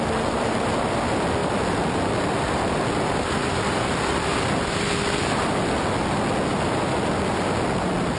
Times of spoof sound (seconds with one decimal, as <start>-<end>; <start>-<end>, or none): 1.4-6.0; 6.5-7.1